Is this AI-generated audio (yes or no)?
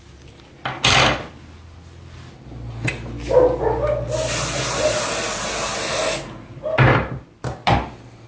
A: no